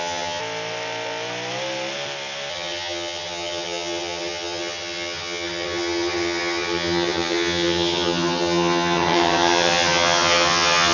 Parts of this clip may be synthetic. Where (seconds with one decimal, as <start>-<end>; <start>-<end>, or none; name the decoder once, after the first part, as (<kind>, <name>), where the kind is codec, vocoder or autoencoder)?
0.0-0.4 (vocoder, HiFi-GAN); 2.5-10.9